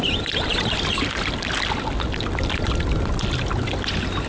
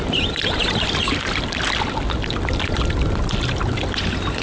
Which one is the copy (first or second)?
second